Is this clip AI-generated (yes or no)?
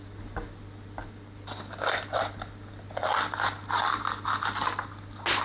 no